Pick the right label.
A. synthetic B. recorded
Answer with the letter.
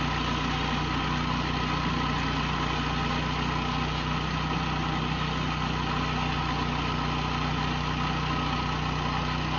B